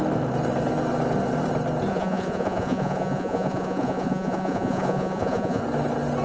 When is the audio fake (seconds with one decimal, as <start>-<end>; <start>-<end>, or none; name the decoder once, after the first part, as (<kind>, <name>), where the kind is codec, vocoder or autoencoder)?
1.9-5.6 (vocoder, Vocos)